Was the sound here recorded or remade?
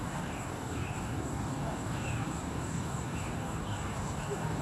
remade